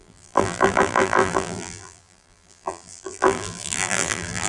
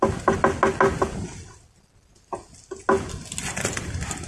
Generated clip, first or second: first